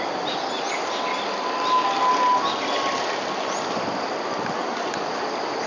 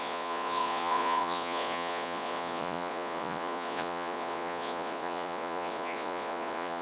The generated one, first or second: second